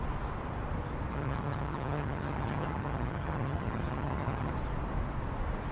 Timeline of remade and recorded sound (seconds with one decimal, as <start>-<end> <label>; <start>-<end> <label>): 0.0-1.1 recorded; 1.1-4.5 remade; 4.5-5.7 recorded

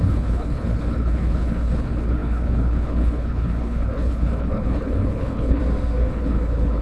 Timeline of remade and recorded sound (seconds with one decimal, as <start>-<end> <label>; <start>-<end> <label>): 0.0-5.6 remade; 5.6-6.1 recorded; 6.1-6.8 remade

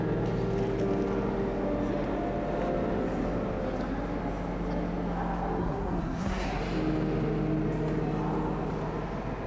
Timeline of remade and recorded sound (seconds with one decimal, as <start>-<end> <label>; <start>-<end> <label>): 0.0-5.6 recorded; 5.6-6.6 remade; 6.6-9.5 recorded

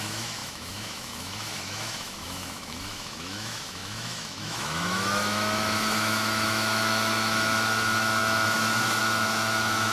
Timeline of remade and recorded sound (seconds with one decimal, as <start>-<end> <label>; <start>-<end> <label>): 0.0-9.9 remade

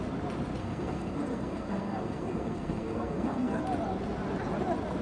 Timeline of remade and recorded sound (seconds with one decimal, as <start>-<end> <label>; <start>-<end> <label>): 0.0-0.6 recorded; 0.6-3.6 remade; 3.6-5.0 recorded